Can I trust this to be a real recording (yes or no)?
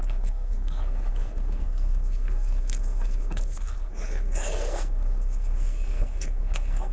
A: no